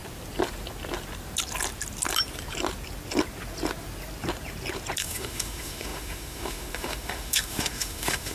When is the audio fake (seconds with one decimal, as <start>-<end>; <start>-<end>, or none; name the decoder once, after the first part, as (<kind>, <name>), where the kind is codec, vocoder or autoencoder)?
5.0-8.3 (autoencoder, DAC-VAE)